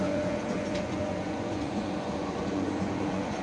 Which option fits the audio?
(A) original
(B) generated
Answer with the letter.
B